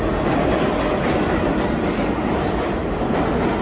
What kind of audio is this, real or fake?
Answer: real